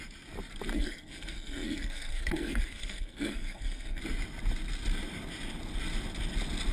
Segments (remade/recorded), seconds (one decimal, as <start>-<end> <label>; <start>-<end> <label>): 0.0-0.7 recorded; 0.7-4.0 remade; 4.0-6.7 recorded

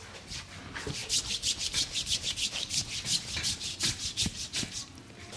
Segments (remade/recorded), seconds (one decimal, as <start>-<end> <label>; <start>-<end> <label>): 0.0-5.4 recorded

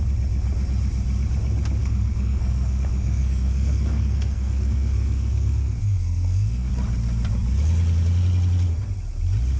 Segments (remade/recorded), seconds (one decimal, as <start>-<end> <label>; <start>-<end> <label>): 0.0-1.8 recorded; 1.8-6.7 remade; 6.7-9.6 recorded

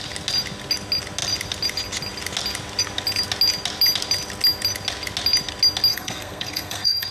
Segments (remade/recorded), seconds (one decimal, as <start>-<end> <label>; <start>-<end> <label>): 0.0-5.9 recorded; 5.9-7.1 remade

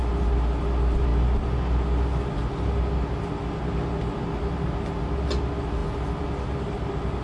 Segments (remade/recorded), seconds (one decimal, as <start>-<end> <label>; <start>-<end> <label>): 0.0-7.2 recorded

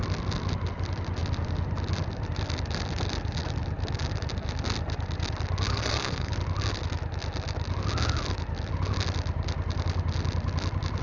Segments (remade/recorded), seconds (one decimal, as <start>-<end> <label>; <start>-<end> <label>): 0.0-5.7 recorded; 5.7-6.3 remade; 6.3-11.0 recorded